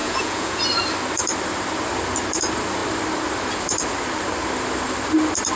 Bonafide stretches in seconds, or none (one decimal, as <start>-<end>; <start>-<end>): 0.6-5.6

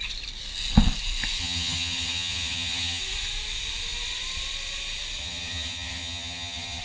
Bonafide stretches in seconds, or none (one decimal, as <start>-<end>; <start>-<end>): 0.0-1.4; 3.0-5.2

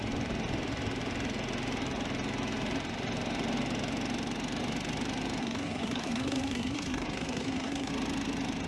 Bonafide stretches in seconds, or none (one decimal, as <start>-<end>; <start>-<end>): 0.0-5.4; 7.9-8.7

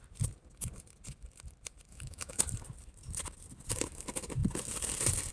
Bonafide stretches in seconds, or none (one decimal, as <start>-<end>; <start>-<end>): 0.0-1.9; 2.4-5.3

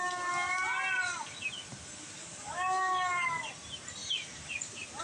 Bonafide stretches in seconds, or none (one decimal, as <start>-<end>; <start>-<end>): 0.0-2.2; 3.5-5.0

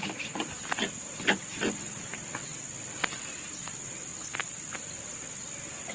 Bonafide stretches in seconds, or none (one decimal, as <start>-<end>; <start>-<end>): 0.0-5.9